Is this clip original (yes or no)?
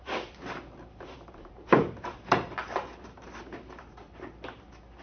no